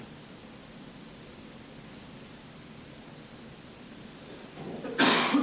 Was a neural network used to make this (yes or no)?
no